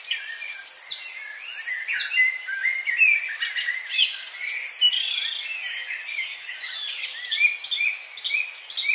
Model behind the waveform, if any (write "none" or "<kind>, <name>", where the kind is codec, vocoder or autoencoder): none